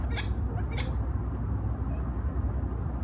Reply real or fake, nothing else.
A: real